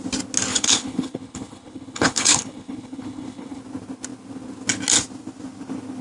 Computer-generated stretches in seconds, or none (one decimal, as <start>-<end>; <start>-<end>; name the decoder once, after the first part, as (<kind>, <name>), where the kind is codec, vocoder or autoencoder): 0.5-3.6 (codec, HILCodec)